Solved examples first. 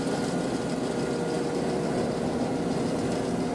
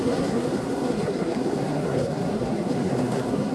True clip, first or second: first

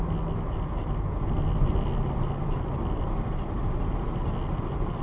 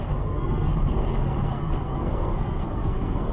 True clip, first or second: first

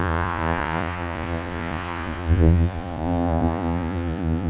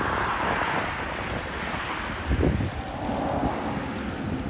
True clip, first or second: second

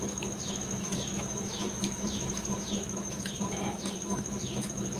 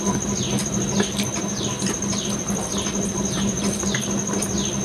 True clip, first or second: second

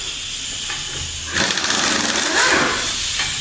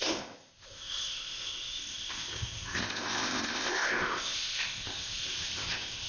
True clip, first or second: first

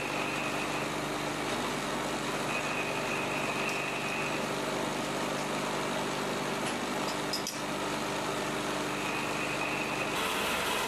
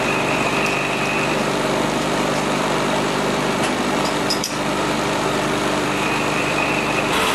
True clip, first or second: first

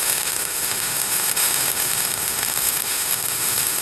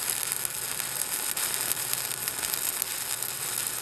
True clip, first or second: second